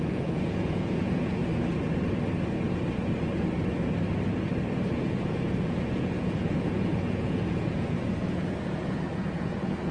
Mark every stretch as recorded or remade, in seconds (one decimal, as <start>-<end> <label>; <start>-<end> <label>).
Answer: 0.0-1.4 remade; 1.4-5.0 recorded; 5.0-9.9 remade